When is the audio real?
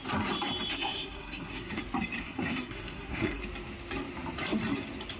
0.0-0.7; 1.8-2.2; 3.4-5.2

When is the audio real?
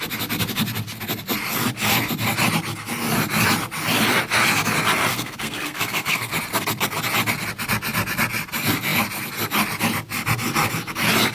0.0-5.1; 6.3-11.3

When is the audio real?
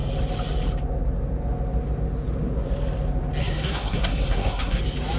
0.0-3.4; 4.8-5.2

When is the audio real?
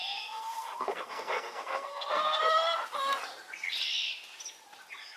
2.4-5.2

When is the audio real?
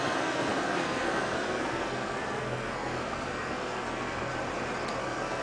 4.3-5.0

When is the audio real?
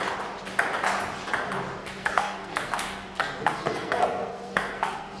0.0-1.8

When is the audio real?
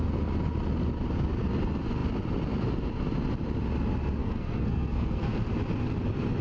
0.0-4.2; 5.5-6.4